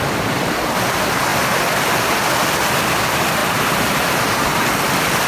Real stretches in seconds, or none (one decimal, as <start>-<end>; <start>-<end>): 0.0-3.4; 4.6-5.3